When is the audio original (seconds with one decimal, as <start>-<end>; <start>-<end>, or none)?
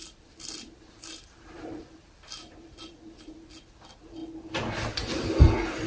3.5-5.9